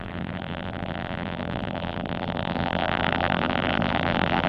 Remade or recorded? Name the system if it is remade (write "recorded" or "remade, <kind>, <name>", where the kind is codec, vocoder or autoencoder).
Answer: remade, vocoder, BigVGAN v2